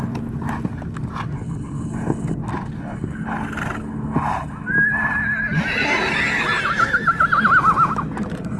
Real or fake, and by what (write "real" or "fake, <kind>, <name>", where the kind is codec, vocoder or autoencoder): real